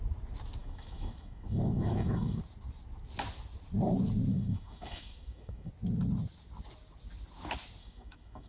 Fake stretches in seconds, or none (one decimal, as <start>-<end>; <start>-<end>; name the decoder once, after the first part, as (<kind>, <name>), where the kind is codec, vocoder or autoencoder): 0.6-2.4 (autoencoder, DAC-VAE); 4.3-5.7; 7.8-8.5